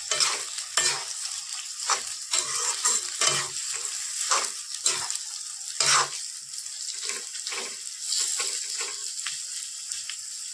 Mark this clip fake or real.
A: real